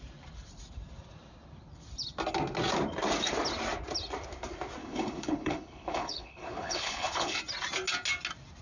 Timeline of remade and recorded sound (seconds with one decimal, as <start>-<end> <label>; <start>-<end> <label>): 0.0-4.8 recorded; 4.8-7.4 remade; 7.4-8.6 recorded